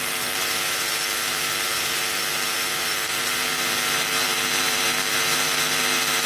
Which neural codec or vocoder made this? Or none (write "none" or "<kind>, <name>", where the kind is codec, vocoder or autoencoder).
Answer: vocoder, BigVGAN v2